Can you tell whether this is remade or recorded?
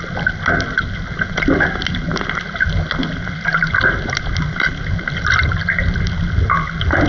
recorded